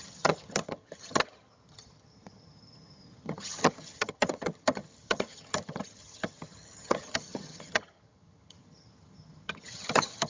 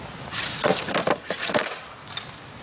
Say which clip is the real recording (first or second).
second